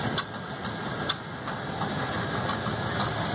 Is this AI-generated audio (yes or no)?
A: no